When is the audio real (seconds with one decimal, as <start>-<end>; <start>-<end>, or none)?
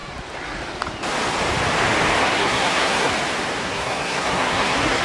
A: 0.0-2.2; 3.1-3.6